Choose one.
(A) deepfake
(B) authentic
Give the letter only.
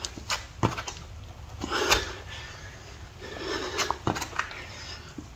B